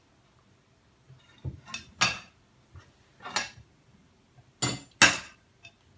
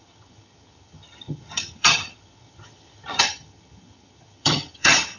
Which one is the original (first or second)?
first